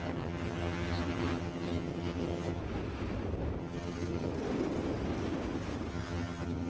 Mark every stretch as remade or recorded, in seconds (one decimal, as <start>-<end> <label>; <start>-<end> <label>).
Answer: 0.0-2.6 remade; 2.6-3.6 recorded; 3.6-4.3 remade; 4.3-5.9 recorded; 5.9-6.7 remade